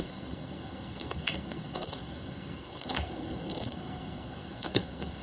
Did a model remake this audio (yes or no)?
yes